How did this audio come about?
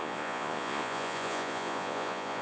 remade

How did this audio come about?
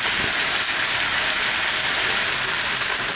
recorded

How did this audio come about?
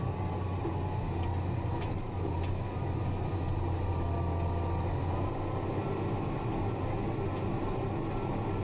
recorded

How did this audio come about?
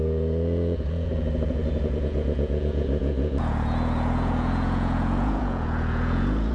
remade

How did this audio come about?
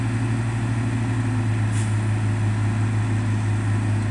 recorded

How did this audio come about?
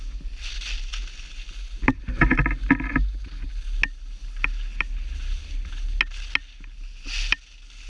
recorded